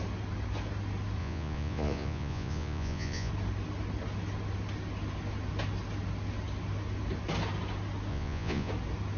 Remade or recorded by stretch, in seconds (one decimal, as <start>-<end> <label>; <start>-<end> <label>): 0.0-1.2 recorded; 1.2-3.3 remade; 3.3-8.1 recorded; 8.1-8.7 remade; 8.7-9.2 recorded